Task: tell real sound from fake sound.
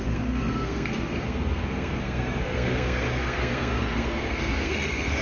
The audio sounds fake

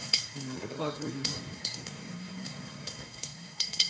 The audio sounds fake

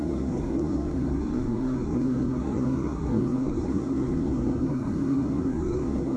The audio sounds fake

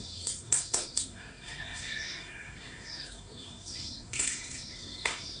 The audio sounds fake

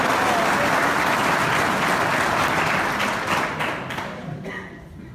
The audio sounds real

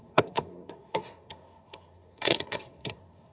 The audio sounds fake